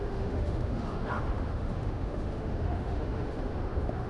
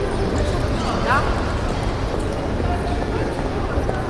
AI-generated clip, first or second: first